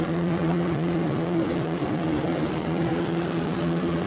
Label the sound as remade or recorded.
remade